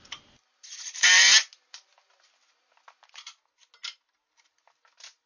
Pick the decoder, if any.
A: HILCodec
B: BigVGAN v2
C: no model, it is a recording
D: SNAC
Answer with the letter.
C